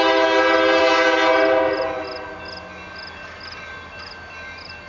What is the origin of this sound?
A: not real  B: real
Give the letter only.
B